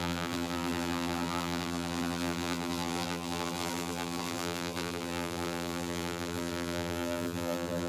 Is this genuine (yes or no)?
no